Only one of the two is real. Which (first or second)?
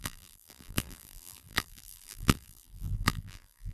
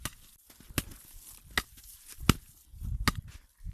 second